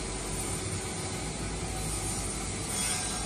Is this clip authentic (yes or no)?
yes